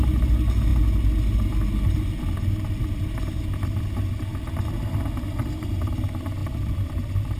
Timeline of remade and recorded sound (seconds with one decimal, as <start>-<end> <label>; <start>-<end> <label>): 0.0-7.4 recorded